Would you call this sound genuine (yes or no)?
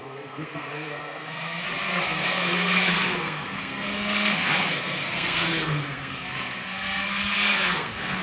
no